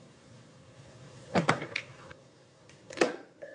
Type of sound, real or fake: fake